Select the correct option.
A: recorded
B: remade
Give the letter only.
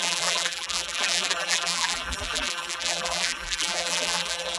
B